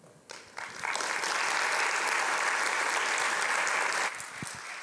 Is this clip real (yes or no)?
yes